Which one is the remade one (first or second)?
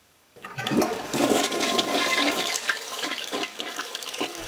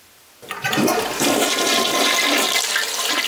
first